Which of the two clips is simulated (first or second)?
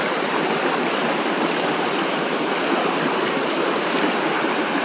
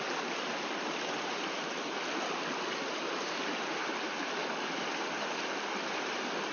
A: first